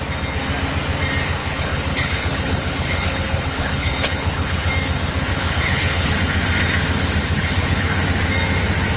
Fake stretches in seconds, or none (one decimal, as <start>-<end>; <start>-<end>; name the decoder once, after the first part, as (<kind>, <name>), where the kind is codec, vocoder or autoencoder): 1.4-4.7 (codec, HILCodec); 5.3-6.1; 7.2-8.0